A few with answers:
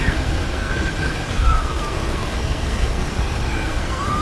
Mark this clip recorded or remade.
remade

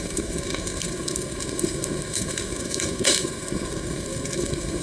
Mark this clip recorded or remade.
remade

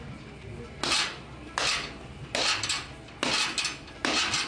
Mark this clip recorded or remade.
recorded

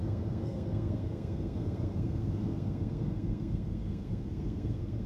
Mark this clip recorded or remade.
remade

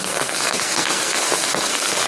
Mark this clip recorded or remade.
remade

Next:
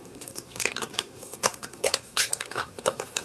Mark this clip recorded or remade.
remade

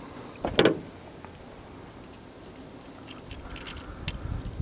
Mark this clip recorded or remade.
recorded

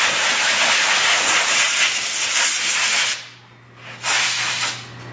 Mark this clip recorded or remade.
recorded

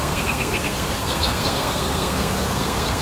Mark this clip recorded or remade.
remade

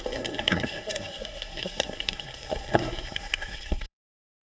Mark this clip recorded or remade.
remade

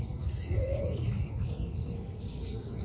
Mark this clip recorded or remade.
remade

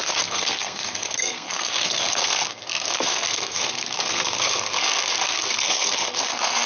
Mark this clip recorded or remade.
remade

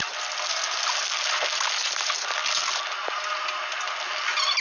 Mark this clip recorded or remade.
recorded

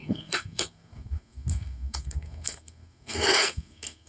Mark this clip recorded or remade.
remade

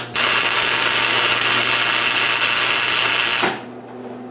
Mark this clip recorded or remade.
recorded